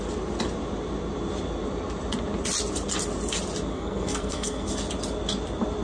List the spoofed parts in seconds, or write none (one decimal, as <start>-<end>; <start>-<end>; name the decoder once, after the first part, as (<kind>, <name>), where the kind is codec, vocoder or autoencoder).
3.7-4.7 (codec, SNAC)